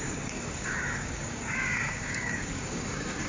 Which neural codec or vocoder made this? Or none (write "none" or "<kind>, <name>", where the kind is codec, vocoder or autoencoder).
codec, DAC